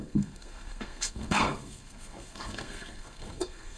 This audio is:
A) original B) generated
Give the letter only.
B